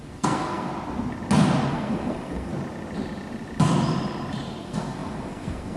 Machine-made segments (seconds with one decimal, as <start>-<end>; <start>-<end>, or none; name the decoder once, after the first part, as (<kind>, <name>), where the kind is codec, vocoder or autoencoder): 0.0-0.7 (codec, SNAC); 1.7-2.5; 4.6-5.8

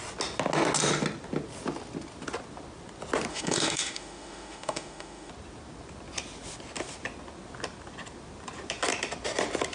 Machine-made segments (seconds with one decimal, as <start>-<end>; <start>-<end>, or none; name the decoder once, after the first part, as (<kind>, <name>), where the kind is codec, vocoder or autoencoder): 3.3-5.3 (autoencoder, DAC-VAE)

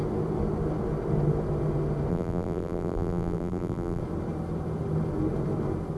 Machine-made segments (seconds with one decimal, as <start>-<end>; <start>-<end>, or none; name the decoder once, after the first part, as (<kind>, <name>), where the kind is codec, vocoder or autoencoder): 2.1-4.0 (vocoder, BigVGAN v2)

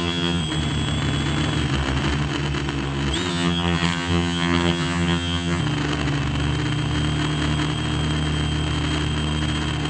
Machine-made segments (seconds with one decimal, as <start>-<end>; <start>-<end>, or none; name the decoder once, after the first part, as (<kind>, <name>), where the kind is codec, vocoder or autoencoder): 0.0-0.4 (vocoder, HiFi-GAN); 3.3-5.6